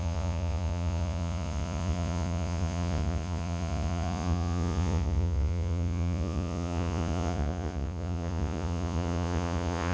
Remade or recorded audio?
remade